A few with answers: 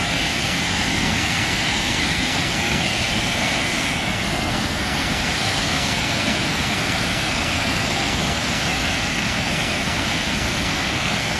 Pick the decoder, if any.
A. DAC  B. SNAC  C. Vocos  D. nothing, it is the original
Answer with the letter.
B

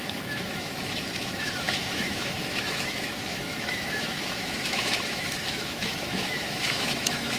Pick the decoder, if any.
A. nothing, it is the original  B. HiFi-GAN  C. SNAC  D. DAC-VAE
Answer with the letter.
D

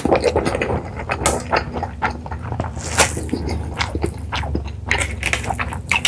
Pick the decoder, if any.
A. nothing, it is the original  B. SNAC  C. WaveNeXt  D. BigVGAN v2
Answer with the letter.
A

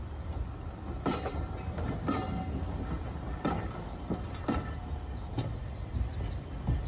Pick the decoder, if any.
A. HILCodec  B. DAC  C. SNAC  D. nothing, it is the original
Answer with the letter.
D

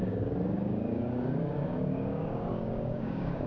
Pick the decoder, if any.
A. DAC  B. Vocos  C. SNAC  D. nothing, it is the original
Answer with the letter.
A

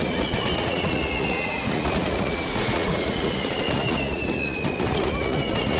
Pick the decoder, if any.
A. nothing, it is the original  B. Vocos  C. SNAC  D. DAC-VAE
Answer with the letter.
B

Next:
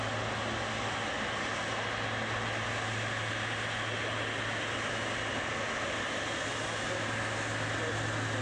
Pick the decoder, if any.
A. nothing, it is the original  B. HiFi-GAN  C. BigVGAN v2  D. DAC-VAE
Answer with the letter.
A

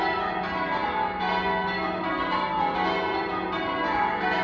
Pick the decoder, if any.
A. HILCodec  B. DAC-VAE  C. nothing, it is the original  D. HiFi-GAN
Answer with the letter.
C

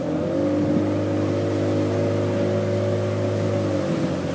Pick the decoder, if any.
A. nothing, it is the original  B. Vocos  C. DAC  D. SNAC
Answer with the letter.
A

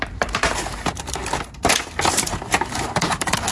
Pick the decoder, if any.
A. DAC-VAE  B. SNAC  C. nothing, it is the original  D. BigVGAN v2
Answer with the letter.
D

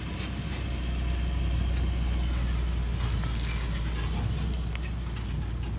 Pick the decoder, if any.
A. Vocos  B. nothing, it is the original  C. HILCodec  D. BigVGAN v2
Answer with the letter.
B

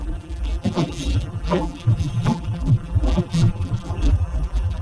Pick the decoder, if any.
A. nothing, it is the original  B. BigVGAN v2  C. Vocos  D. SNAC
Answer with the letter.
B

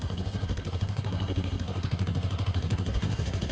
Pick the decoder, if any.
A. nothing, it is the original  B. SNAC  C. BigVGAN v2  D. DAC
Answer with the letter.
B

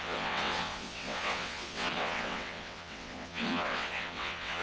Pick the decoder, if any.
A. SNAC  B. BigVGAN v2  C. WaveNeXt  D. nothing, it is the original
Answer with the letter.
C